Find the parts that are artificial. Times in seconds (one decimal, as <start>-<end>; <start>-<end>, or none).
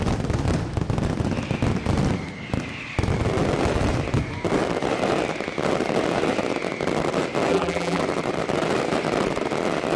7.5-8.0